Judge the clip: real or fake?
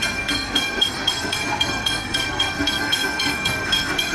fake